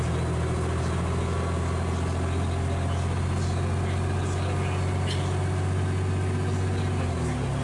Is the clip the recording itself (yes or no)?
yes